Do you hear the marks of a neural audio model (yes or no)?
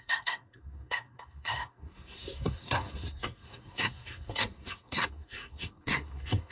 yes